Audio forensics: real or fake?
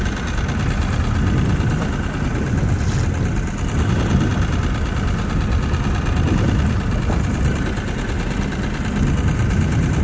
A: real